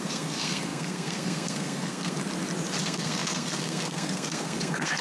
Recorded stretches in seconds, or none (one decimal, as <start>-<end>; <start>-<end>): 2.2-2.8